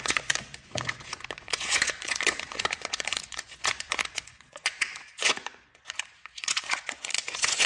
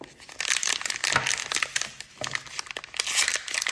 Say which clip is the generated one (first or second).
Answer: first